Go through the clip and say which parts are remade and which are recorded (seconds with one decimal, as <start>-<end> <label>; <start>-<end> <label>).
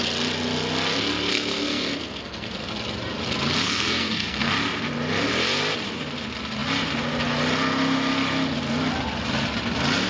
0.0-1.3 recorded; 1.3-2.7 remade; 2.7-3.6 recorded; 3.6-4.5 remade; 4.5-10.1 recorded